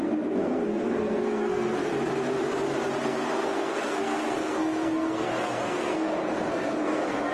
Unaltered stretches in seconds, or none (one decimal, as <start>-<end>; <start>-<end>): 1.9-3.0